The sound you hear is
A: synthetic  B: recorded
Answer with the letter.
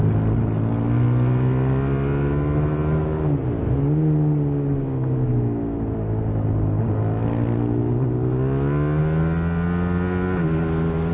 B